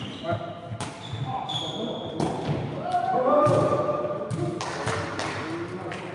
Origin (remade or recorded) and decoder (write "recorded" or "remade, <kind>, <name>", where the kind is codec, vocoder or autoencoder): recorded